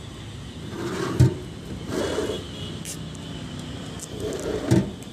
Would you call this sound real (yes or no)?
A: yes